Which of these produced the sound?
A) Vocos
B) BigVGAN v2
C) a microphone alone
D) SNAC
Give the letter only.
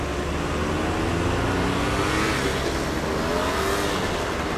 C